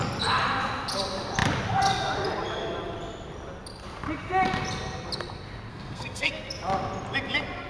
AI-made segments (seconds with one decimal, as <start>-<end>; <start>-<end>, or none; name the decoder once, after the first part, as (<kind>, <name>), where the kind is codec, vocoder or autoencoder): 5.7-6.3 (codec, SNAC)